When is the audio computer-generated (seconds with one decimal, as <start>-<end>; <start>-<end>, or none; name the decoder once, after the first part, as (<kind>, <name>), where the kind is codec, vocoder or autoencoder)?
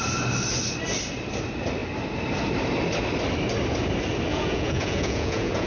4.3-5.7 (vocoder, Vocos)